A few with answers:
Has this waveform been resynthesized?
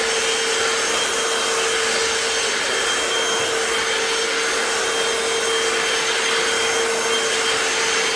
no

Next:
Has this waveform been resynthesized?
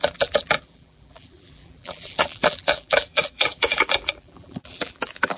yes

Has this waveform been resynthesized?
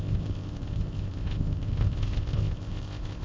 yes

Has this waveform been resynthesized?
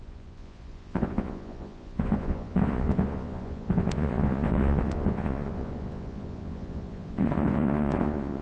yes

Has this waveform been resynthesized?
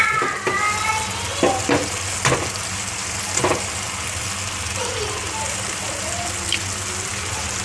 no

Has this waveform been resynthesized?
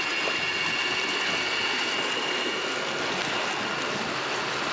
no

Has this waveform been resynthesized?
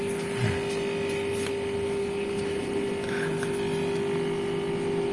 no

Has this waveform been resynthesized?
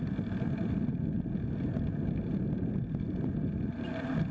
no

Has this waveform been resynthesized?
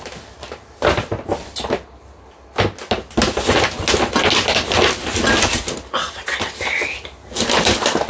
no